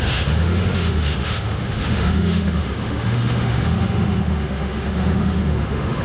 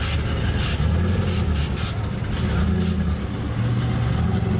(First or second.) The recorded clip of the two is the second